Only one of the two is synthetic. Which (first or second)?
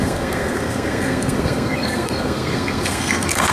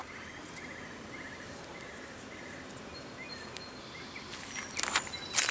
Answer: first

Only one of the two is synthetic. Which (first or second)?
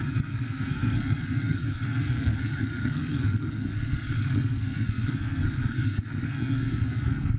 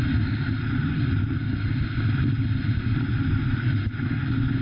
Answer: first